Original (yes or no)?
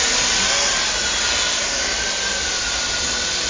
yes